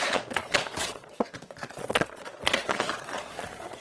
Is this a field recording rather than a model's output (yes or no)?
no